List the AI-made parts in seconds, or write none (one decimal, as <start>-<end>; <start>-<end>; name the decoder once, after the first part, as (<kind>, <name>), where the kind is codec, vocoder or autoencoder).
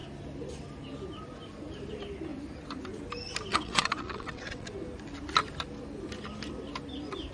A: 3.5-4.7 (vocoder, WaveNeXt)